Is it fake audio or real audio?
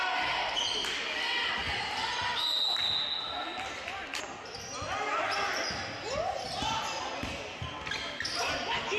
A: real